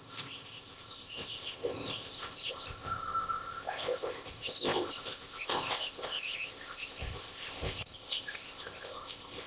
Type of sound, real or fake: fake